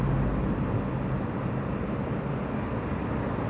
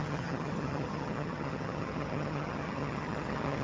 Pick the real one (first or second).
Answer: first